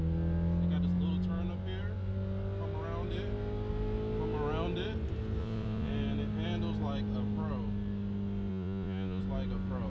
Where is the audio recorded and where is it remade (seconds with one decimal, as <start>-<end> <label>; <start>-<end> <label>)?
0.0-5.4 recorded; 5.4-5.9 remade; 5.9-8.5 recorded; 8.5-9.2 remade; 9.2-9.9 recorded